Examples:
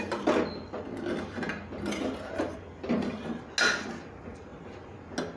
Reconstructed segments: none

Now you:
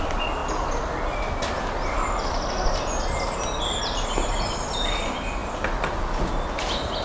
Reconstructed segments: none

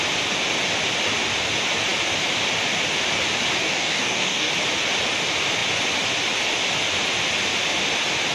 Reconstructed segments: 3.6-4.5 (codec, DAC)

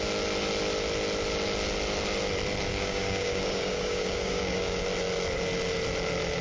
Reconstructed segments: 2.7-4.8 (codec, DAC)